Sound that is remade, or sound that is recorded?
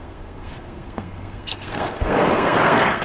remade